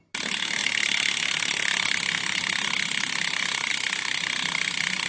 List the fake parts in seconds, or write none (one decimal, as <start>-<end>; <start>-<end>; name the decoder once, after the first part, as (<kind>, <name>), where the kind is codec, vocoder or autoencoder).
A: none